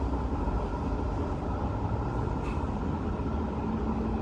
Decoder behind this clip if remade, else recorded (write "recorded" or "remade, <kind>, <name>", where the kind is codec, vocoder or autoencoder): recorded